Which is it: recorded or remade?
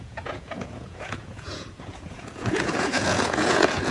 remade